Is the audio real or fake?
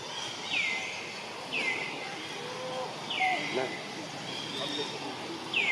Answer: real